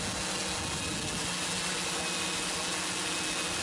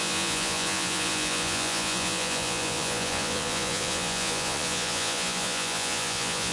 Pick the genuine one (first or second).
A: first